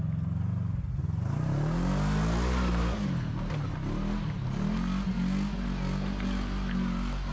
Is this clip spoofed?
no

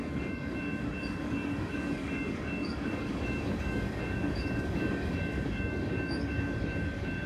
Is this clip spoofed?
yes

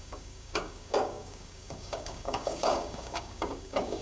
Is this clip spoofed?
yes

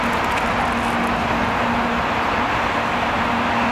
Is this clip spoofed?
no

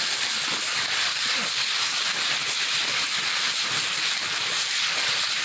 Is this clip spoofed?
no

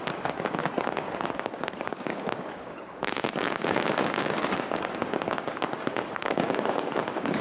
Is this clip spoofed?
yes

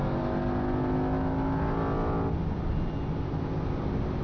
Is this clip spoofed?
no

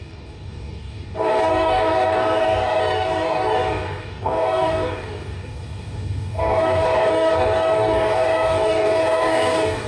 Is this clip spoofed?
yes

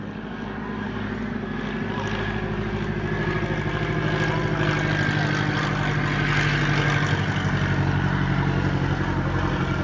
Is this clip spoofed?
no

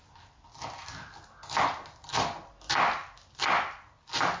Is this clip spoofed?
no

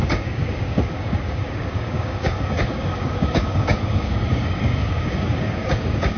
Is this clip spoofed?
yes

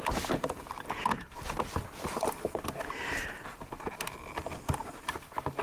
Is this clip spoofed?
no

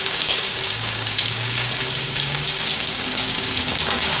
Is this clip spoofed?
yes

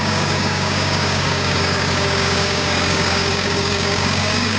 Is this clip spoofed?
yes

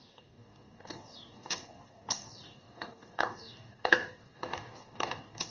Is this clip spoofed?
yes